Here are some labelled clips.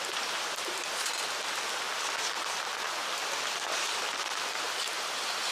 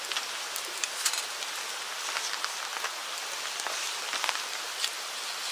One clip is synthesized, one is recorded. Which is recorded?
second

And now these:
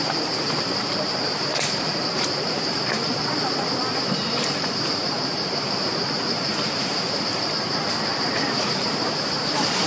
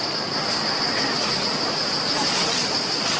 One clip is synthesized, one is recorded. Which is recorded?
second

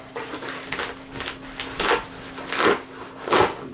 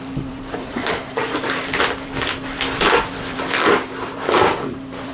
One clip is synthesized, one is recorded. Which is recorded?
first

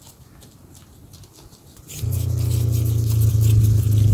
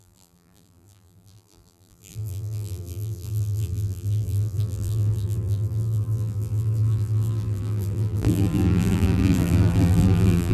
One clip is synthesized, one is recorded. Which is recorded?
first